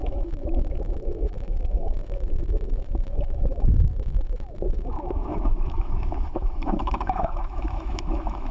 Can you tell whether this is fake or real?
fake